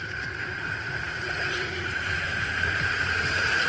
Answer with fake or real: fake